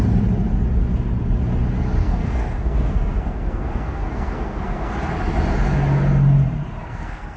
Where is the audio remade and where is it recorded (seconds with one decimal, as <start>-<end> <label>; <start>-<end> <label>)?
0.0-2.0 recorded; 2.0-4.9 remade; 4.9-6.8 recorded; 6.8-7.4 remade

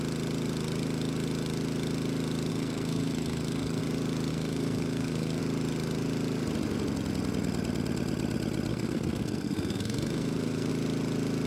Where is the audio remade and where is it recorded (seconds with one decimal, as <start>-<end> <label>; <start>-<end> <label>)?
0.0-2.5 recorded; 2.5-3.8 remade; 3.8-4.3 recorded; 4.3-5.4 remade; 5.4-8.7 recorded; 8.7-10.7 remade; 10.7-11.5 recorded

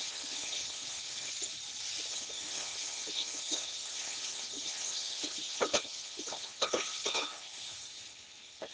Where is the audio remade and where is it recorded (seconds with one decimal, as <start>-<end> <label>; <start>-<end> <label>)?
0.0-1.3 remade; 1.3-2.1 recorded; 2.1-8.7 remade